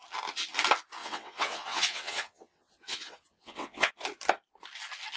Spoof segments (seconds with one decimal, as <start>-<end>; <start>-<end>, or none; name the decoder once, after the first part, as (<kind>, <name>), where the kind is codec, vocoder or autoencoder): 1.0-3.9 (vocoder, WaveNeXt)